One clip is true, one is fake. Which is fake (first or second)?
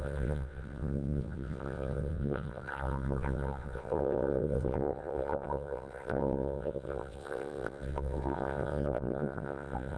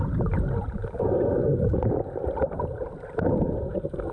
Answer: first